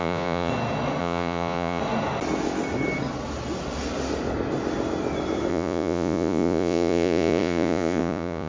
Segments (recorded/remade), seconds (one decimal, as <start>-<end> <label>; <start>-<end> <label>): 0.0-0.5 remade; 0.5-1.0 recorded; 1.0-1.8 remade; 1.8-5.5 recorded; 5.5-8.5 remade